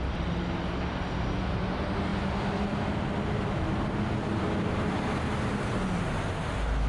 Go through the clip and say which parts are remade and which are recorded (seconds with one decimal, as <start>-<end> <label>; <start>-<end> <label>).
0.0-6.9 recorded